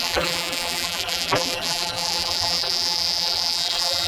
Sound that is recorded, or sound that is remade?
remade